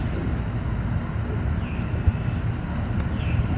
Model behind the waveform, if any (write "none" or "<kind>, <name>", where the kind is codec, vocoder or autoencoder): none